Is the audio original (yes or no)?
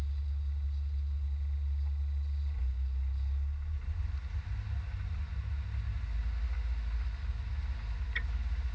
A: yes